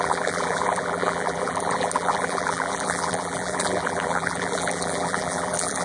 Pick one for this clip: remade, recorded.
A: remade